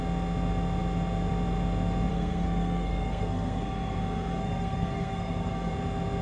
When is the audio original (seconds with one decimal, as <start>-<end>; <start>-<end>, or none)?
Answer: 0.0-2.1; 5.7-6.2